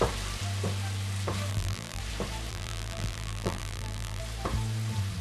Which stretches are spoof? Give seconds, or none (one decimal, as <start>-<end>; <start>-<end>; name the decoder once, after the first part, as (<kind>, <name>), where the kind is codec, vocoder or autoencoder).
1.5-2.0 (vocoder, BigVGAN v2); 2.5-4.2